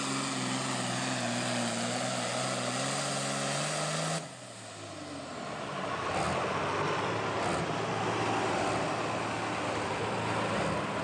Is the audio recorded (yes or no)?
yes